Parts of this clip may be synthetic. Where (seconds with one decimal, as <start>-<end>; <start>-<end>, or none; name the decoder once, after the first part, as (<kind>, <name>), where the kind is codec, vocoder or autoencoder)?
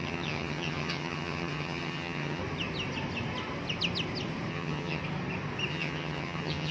0.0-2.4 (vocoder, HiFi-GAN); 4.5-5.0; 5.7-6.7